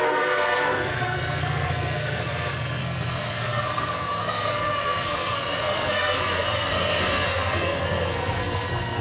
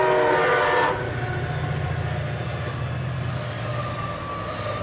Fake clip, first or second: first